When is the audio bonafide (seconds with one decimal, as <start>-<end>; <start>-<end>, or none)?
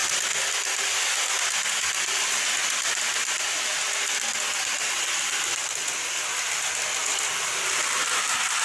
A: 0.0-1.7; 3.7-4.6